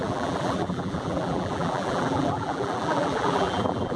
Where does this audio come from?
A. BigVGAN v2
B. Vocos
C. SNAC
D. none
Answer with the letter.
A